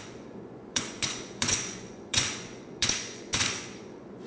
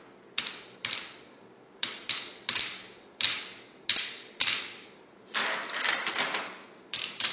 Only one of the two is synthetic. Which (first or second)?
first